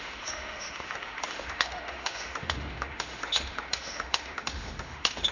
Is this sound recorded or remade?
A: remade